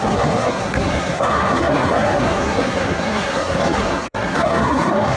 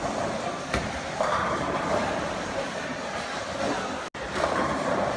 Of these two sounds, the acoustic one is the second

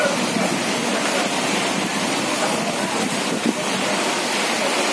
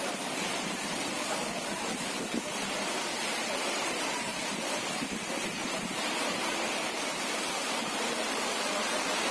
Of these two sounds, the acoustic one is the first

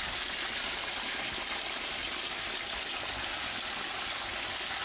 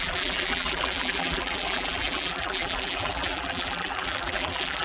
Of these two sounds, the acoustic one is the first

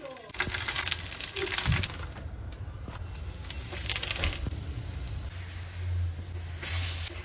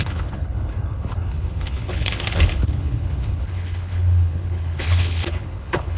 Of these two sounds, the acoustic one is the first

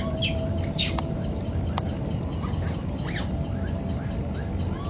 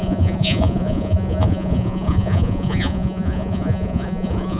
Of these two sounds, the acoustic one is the first